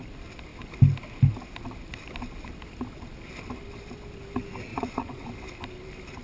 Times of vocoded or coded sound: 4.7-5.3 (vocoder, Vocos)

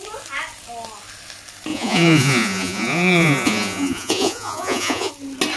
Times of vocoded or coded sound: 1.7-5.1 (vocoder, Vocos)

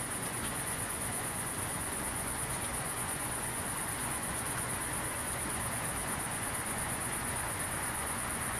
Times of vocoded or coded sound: 0.0-8.6 (vocoder, Vocos)

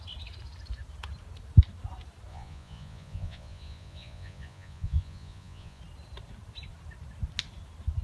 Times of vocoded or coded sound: 2.3-5.8 (vocoder, Vocos)